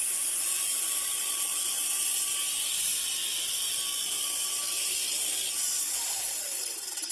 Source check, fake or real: real